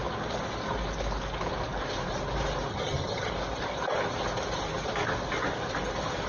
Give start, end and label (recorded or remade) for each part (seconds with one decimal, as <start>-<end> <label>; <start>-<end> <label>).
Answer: 0.0-2.7 recorded; 2.7-3.3 remade; 3.3-6.3 recorded

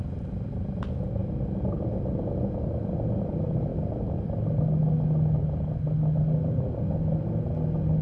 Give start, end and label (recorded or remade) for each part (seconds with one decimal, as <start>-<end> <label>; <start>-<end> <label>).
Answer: 0.0-8.0 recorded